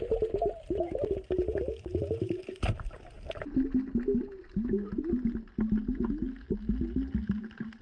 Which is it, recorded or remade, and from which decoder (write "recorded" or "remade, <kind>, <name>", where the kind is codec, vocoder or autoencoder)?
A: recorded